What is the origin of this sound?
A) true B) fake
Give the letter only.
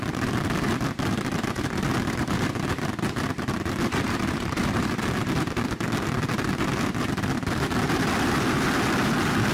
B